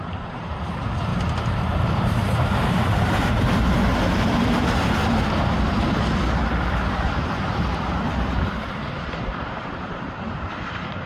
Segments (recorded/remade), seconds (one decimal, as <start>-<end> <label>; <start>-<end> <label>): 0.0-5.0 remade; 5.0-7.1 recorded; 7.1-11.1 remade